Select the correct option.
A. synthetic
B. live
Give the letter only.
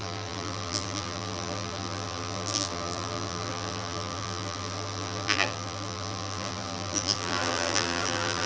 A